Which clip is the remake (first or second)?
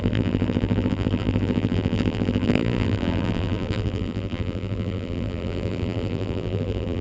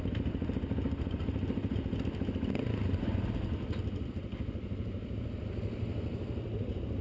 first